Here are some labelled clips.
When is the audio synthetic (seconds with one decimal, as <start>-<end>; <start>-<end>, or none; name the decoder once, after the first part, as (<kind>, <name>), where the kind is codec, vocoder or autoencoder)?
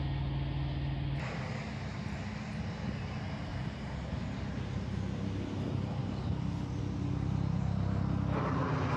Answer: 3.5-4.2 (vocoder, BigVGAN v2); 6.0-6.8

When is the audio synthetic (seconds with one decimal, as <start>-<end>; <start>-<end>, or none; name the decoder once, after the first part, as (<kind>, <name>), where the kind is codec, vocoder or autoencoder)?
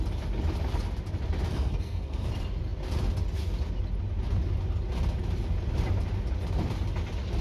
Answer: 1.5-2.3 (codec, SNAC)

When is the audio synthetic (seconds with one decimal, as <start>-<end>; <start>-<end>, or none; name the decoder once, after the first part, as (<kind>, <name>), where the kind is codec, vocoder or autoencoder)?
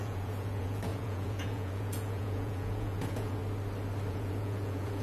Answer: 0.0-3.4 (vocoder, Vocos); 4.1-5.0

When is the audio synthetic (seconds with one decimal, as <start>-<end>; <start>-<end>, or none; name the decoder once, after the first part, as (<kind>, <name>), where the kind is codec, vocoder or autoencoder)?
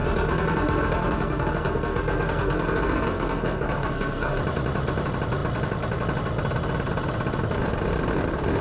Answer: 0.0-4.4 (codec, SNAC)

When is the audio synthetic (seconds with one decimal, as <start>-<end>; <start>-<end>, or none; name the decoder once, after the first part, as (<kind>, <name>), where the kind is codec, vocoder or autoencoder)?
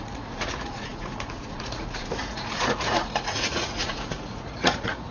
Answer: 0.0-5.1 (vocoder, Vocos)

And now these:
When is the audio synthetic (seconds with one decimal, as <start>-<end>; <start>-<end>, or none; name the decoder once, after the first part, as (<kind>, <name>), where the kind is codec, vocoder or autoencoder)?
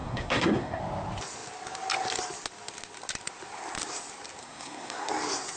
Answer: 0.0-0.8 (codec, SNAC); 4.4-5.1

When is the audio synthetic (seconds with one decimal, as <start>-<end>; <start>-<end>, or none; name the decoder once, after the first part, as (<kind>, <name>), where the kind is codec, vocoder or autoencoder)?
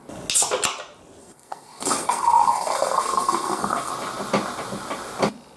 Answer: 1.2-3.9 (codec, SNAC)